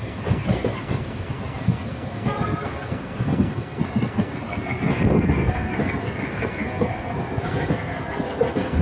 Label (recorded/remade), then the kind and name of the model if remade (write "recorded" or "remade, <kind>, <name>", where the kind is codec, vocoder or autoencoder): remade, codec, SNAC